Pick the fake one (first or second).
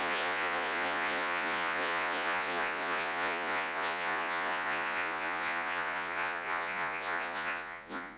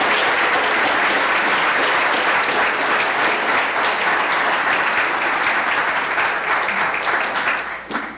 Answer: first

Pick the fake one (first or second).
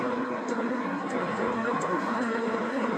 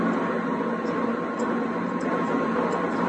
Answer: first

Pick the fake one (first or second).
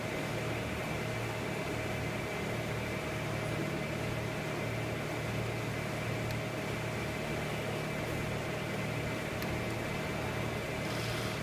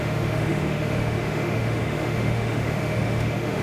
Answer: second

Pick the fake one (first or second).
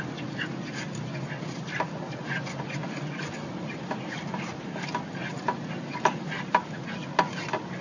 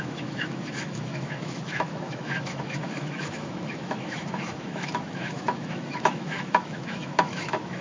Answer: second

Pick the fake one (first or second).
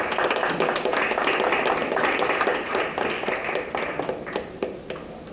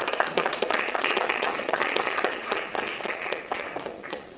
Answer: second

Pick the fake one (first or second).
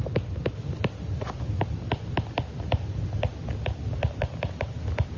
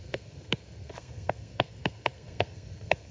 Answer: second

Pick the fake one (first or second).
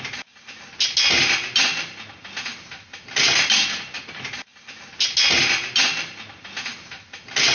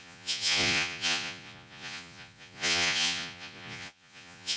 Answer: second